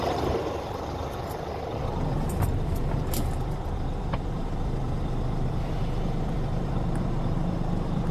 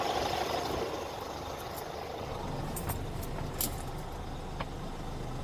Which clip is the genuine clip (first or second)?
second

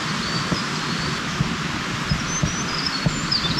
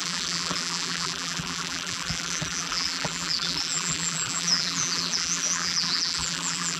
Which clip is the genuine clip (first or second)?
first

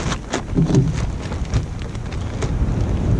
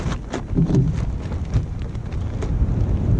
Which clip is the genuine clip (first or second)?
first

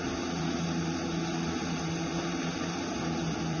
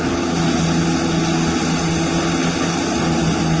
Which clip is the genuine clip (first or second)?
second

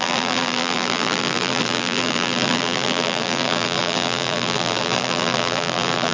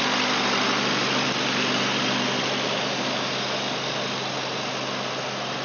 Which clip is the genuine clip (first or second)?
second